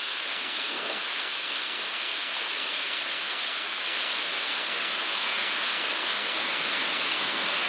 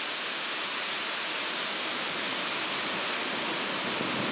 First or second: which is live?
second